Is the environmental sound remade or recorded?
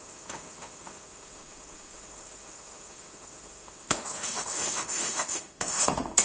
remade